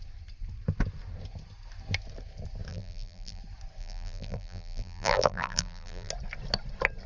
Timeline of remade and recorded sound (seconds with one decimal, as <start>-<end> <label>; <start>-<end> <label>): 0.0-2.7 recorded; 2.7-3.4 remade; 3.4-3.8 recorded; 3.8-6.1 remade; 6.1-7.1 recorded

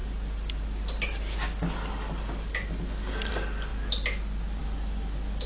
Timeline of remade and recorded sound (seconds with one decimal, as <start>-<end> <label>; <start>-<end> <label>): 0.0-5.5 recorded

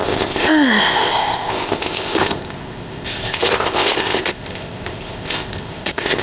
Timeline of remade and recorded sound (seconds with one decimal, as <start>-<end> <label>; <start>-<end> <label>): 0.0-6.2 remade

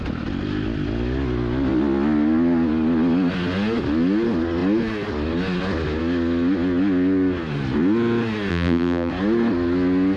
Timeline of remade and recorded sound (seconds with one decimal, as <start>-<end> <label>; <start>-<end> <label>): 0.0-8.5 recorded; 8.5-9.1 remade; 9.1-10.2 recorded

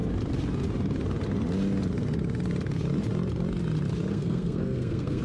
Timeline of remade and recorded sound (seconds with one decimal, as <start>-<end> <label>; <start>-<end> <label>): 0.0-4.1 recorded; 4.1-5.2 remade

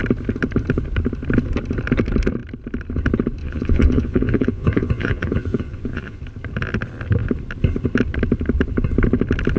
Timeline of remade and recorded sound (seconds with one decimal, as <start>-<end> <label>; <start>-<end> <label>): 0.0-3.4 recorded; 3.4-6.2 remade; 6.2-9.6 recorded

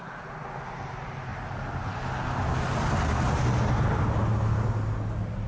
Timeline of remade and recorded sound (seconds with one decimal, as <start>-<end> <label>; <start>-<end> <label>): 0.0-5.5 recorded